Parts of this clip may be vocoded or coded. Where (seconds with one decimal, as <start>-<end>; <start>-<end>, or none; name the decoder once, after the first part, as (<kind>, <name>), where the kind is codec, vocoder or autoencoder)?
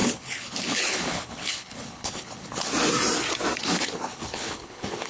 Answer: 0.0-2.7 (codec, HILCodec); 3.6-5.1